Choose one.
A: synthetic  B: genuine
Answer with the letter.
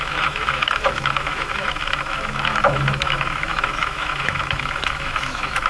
A